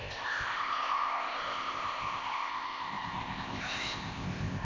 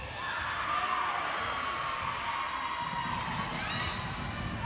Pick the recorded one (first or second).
second